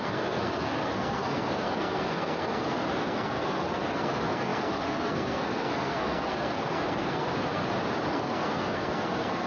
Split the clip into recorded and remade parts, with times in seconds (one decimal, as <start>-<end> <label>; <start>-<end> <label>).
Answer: 0.0-7.6 remade; 7.6-8.1 recorded; 8.1-9.5 remade